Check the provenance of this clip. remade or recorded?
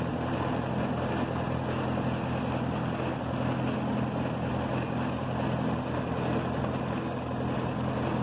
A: recorded